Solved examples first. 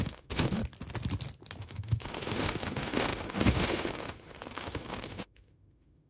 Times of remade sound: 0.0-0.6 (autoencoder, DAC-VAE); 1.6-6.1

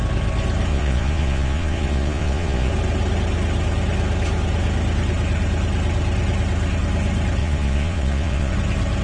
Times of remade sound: 0.7-2.7 (vocoder, Vocos); 7.4-8.5

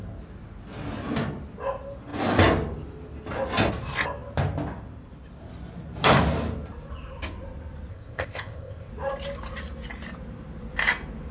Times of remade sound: 7.9-8.9 (codec, ZipCodec)

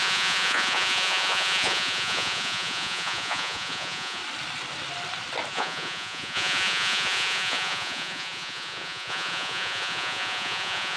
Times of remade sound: 0.0-4.2 (vocoder, Vocos); 5.5-11.0